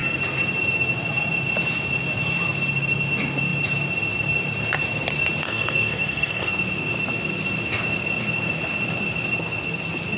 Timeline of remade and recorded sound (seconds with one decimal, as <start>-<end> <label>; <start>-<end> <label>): 0.0-5.4 recorded; 5.4-6.5 remade; 6.5-10.2 recorded